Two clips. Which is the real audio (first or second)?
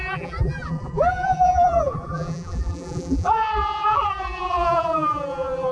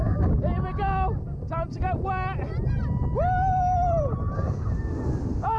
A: second